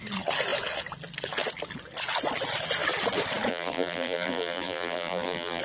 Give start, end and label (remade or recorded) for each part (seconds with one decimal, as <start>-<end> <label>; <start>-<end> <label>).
0.0-3.5 recorded; 3.5-5.6 remade